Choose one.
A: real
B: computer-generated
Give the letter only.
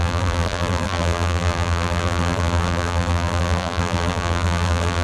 B